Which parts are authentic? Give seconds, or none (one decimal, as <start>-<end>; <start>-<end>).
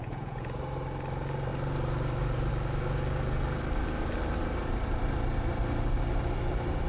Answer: 0.6-6.9